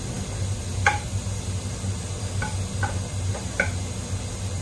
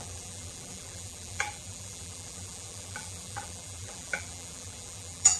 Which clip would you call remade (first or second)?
second